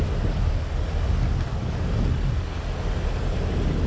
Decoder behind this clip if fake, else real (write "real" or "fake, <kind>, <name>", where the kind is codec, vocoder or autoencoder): real